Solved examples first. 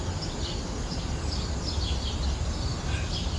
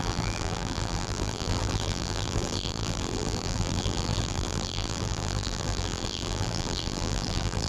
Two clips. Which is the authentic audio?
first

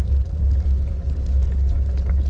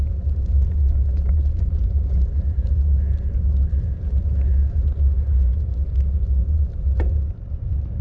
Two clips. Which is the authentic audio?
first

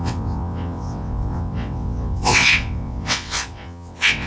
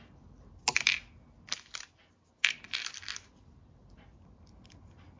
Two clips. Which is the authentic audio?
second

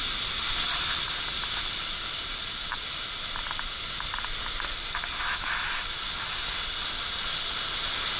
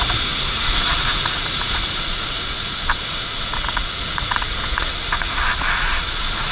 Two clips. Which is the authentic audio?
first